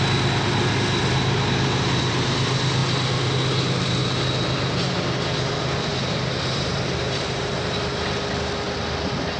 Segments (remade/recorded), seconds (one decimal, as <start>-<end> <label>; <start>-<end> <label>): 0.0-5.9 recorded; 5.9-7.9 remade; 7.9-9.4 recorded